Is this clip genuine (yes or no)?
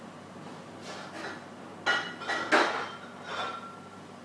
yes